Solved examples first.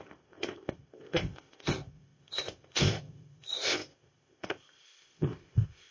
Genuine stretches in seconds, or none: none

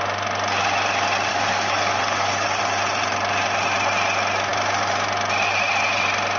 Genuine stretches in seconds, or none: 0.0-1.3; 2.6-6.4

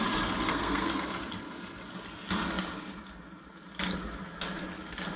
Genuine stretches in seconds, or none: 0.0-0.5; 1.1-5.2

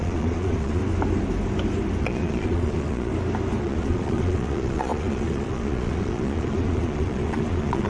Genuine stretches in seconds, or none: 0.8-2.0; 3.1-3.6

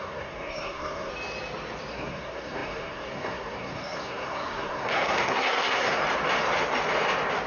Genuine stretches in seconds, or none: 1.1-1.9; 6.0-7.5

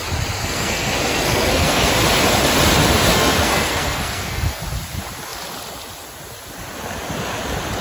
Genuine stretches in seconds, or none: 0.0-0.4; 1.9-3.1; 4.6-7.8

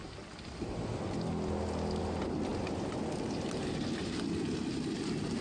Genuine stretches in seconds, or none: 0.0-2.0

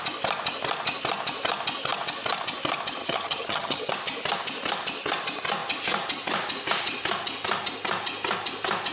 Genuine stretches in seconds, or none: 0.0-3.0; 3.9-8.9